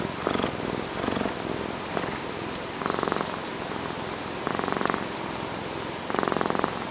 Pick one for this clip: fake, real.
real